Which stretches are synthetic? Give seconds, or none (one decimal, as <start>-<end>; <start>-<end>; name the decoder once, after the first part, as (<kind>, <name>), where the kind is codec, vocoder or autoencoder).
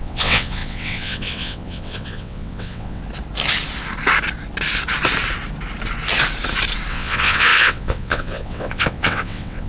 0.0-3.0 (vocoder, WaveNeXt); 6.9-9.7